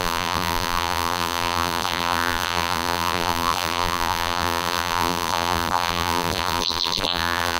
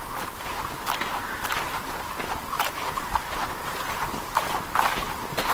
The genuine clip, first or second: second